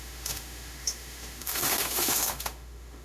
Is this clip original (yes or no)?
no